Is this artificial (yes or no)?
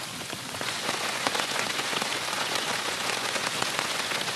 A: yes